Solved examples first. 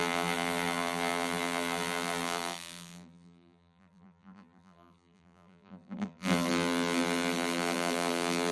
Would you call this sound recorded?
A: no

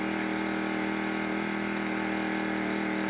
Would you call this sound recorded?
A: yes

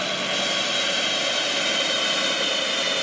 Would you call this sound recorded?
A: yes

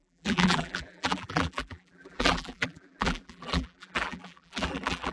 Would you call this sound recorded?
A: no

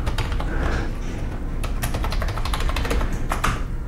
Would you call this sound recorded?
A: yes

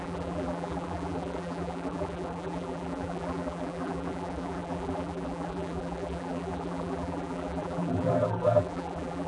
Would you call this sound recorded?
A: no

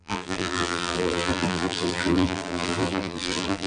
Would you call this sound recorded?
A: no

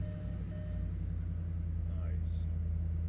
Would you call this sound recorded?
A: yes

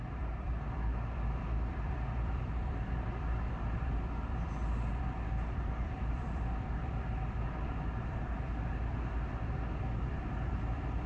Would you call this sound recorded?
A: no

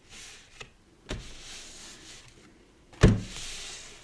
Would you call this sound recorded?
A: yes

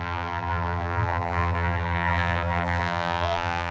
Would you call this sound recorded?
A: no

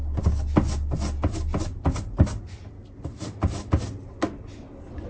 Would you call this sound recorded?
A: yes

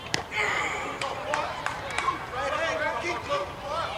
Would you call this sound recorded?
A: no